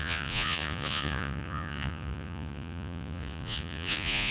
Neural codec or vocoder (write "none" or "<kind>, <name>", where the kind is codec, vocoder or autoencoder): vocoder, Vocos